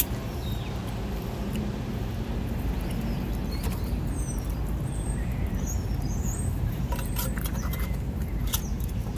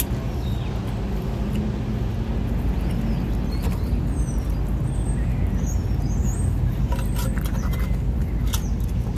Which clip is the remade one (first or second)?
first